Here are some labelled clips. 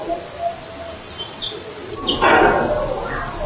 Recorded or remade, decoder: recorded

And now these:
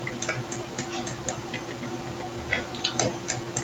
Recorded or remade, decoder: recorded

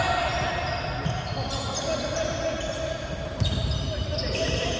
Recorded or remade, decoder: recorded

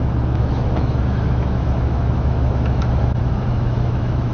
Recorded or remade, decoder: remade, autoencoder, DAC-VAE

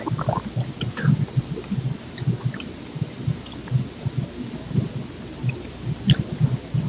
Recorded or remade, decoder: recorded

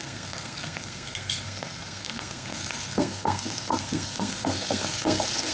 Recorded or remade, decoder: remade, codec, SNAC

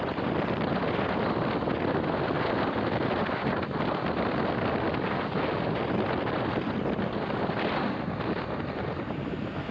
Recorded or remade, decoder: recorded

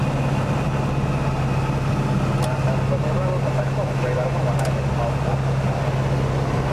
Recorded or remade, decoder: recorded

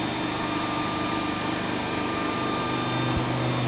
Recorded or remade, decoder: recorded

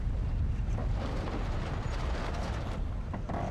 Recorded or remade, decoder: recorded